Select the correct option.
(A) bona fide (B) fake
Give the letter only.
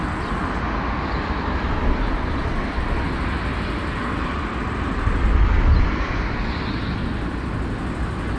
A